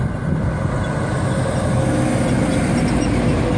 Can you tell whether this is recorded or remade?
recorded